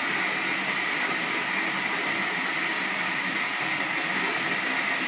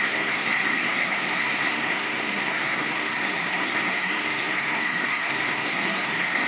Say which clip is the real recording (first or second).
first